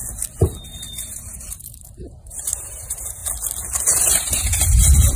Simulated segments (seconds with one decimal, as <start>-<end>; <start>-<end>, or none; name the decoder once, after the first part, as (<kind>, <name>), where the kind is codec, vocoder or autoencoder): 1.0-3.2 (vocoder, BigVGAN v2); 3.8-5.2